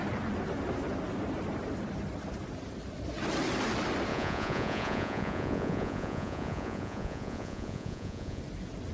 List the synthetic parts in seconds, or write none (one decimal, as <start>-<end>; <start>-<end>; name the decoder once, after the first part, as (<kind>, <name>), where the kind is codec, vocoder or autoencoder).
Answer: 4.1-8.4 (vocoder, Vocos)